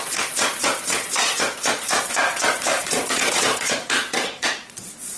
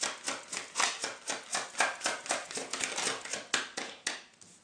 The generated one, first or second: first